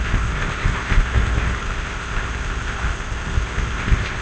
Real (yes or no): no